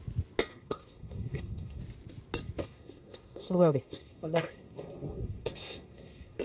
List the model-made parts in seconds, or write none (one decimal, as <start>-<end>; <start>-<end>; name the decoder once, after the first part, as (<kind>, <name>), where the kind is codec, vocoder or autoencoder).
0.5-1.8 (codec, SNAC); 2.6-6.4